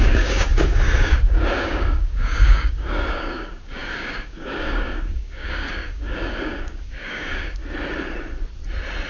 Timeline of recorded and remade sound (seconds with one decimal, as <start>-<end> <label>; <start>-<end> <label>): 0.0-7.6 remade; 7.6-9.1 recorded